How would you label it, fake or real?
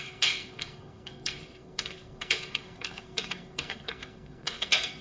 fake